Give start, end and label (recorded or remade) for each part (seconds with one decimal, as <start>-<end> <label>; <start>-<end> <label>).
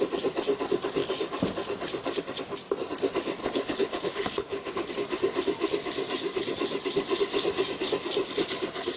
0.0-3.4 recorded; 3.4-4.9 remade; 4.9-9.0 recorded